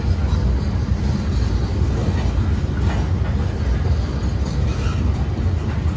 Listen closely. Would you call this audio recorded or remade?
recorded